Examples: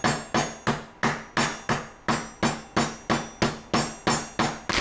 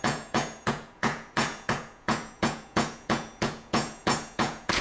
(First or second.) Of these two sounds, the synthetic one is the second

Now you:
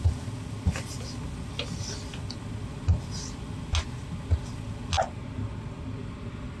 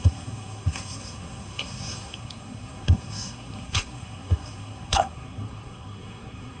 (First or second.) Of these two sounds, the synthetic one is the second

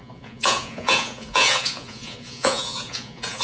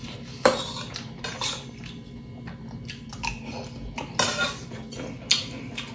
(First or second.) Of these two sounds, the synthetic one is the first